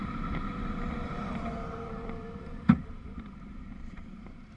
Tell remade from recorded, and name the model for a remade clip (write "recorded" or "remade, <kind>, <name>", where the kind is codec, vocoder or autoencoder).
remade, vocoder, BigVGAN v2